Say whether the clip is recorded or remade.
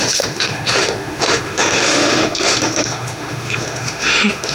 remade